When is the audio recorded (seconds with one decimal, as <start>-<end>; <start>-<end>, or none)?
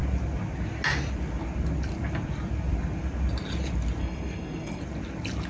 0.0-4.0; 4.8-5.5